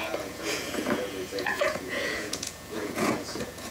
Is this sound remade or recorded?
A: remade